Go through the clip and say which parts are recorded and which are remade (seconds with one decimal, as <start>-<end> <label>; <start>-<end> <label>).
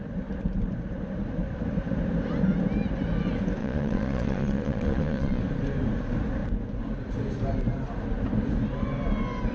0.0-3.6 recorded; 3.6-5.4 remade; 5.4-9.5 recorded